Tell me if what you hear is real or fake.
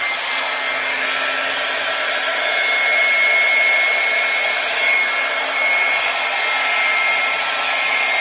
real